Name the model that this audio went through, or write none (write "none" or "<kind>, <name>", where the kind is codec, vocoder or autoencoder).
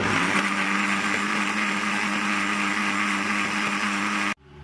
none